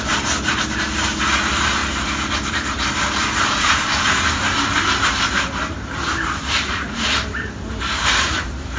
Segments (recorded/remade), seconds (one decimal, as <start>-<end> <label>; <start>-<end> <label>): 0.0-1.8 remade; 1.8-2.5 recorded; 2.5-8.8 remade

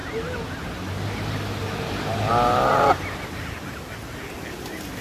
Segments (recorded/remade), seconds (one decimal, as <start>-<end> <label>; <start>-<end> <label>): 0.0-2.3 remade; 2.3-5.0 recorded

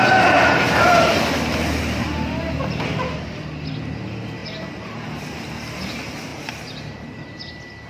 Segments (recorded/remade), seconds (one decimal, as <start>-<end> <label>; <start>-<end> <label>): 0.0-4.4 recorded; 4.4-5.8 remade; 5.8-6.3 recorded; 6.3-7.5 remade; 7.5-7.9 recorded